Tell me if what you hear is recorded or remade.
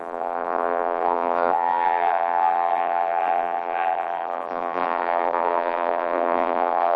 remade